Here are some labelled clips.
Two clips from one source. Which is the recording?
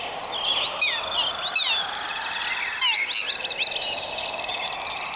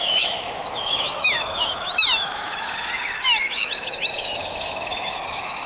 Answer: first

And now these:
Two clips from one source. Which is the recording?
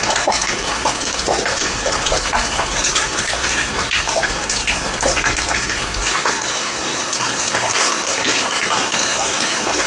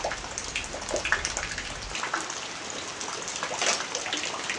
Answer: second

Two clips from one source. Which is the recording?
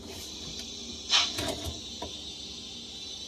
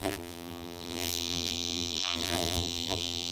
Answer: first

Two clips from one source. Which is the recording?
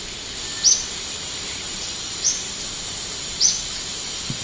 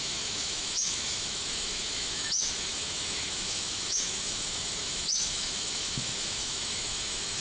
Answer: first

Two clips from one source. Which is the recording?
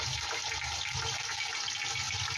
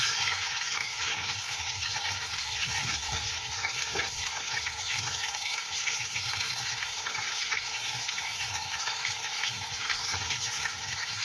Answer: first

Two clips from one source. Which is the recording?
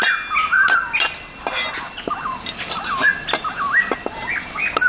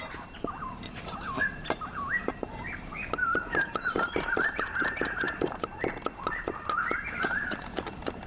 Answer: first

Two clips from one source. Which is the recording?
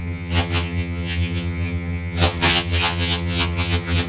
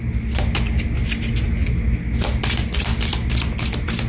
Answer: second